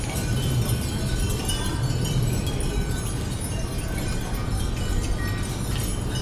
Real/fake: real